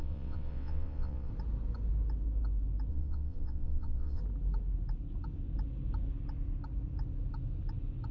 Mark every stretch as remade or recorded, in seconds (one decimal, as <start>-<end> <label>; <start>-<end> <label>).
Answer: 0.0-1.3 remade; 1.3-2.9 recorded; 2.9-4.2 remade; 4.2-8.1 recorded